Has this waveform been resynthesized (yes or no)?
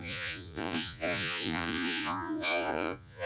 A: yes